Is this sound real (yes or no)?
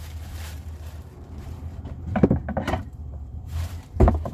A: no